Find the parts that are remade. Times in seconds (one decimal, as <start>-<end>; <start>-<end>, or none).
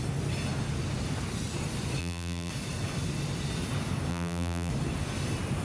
2.0-2.5; 4.1-4.7